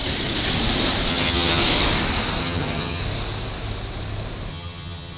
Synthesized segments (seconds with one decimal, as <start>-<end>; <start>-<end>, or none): 1.1-1.6; 2.4-3.0; 4.5-5.2